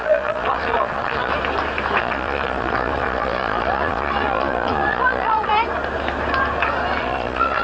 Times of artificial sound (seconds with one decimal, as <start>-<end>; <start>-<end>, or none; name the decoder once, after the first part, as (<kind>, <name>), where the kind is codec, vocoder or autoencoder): 0.0-1.3 (vocoder, Vocos); 2.0-5.5; 7.0-7.6